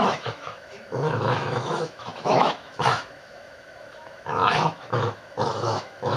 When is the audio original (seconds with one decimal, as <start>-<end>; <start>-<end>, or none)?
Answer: none

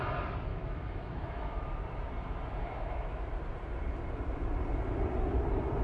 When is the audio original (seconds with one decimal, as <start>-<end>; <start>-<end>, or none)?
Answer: 0.0-0.5; 1.7-2.6; 3.3-5.8

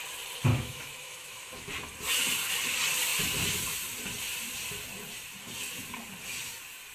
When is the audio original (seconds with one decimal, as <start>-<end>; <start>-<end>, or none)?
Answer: 0.0-0.5; 1.7-6.9

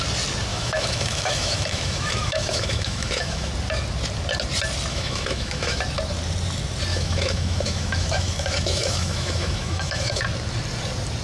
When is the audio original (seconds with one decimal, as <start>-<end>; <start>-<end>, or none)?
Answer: 0.0-0.5; 3.5-4.9; 5.8-6.9; 10.2-11.2

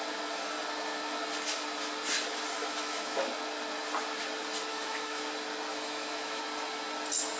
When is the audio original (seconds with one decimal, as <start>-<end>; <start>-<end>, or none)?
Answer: 0.0-2.6; 3.3-4.7; 5.2-5.7; 6.4-7.4

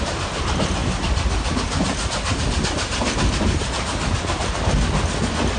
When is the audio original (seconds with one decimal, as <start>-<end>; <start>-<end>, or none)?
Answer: 0.0-5.6